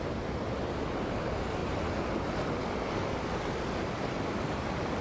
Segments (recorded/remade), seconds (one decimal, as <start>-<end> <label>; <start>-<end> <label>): 0.0-5.0 recorded